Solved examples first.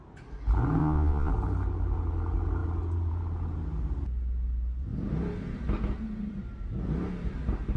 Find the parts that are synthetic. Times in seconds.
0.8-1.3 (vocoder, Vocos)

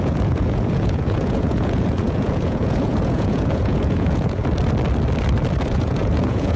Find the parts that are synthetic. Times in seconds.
0.0-4.4 (vocoder, Vocos); 5.7-6.6

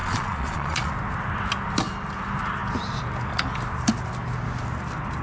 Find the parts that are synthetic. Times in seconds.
0.0-0.9 (vocoder, Vocos)

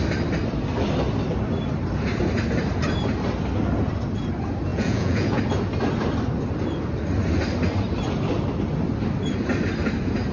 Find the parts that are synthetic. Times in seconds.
4.7-5.4 (vocoder, Vocos)

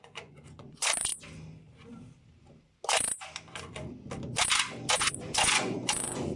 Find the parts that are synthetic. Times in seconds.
0.0-1.1 (vocoder, Vocos); 4.9-6.4

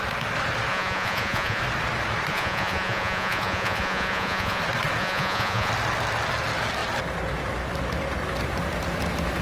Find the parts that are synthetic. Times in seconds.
0.7-1.6 (vocoder, Vocos); 2.3-4.6; 5.0-5.7

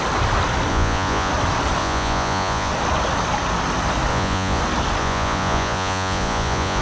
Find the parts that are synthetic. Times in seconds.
0.7-1.3 (vocoder, Vocos); 1.8-2.7; 4.1-4.6; 5.0-6.8